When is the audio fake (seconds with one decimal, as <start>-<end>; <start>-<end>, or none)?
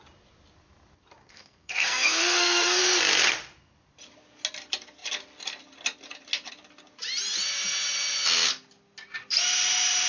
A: 1.2-2.8